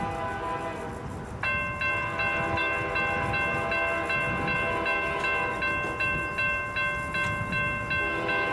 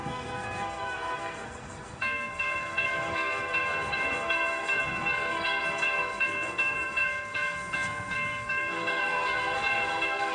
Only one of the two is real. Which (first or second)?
first